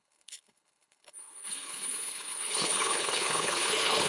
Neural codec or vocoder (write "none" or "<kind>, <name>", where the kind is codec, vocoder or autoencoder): codec, HILCodec